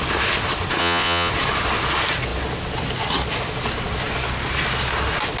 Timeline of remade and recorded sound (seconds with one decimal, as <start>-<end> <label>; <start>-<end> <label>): 0.0-0.8 recorded; 0.8-1.3 remade; 1.3-5.4 recorded